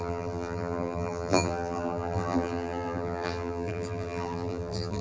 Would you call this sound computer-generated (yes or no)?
yes